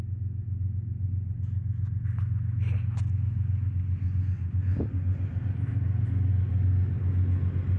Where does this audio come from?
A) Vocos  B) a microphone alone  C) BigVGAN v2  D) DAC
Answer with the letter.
B